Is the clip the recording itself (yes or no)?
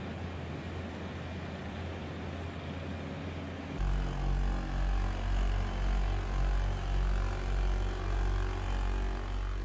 yes